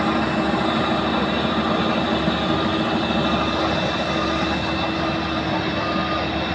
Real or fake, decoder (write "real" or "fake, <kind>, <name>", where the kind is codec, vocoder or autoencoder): real